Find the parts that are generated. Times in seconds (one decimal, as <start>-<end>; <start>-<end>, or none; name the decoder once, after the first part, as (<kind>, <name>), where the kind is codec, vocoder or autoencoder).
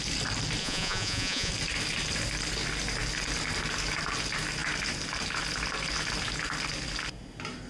0.6-1.5 (vocoder, Vocos)